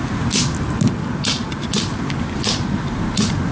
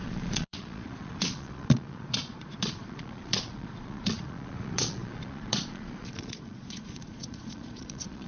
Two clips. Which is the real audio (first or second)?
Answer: first